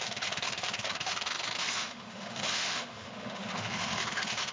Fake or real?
fake